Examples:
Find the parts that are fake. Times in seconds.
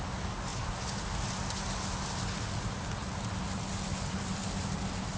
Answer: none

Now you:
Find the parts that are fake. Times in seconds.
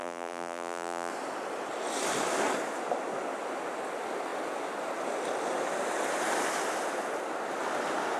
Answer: 0.0-1.1 (vocoder, BigVGAN v2)